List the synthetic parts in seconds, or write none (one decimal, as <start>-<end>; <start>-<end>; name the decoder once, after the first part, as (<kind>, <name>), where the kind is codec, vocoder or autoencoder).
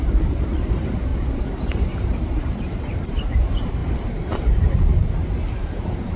0.0-1.1 (vocoder, BigVGAN v2); 1.6-4.9; 5.5-6.2